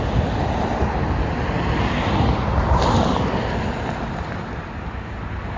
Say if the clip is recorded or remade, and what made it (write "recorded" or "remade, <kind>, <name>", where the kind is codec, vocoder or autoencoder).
remade, vocoder, BigVGAN v2